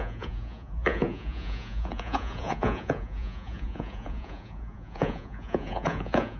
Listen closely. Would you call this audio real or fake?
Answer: fake